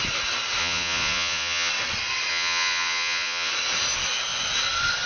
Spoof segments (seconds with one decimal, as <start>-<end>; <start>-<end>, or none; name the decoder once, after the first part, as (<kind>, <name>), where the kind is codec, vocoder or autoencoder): 0.6-1.7 (vocoder, Vocos); 2.3-3.5